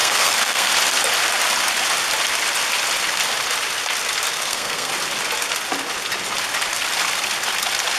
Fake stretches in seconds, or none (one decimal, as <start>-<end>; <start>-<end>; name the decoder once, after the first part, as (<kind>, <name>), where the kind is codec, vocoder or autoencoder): 0.0-0.7 (codec, SNAC); 4.3-4.9